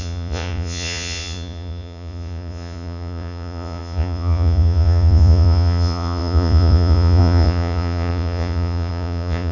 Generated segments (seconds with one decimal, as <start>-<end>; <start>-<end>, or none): 0.0-9.5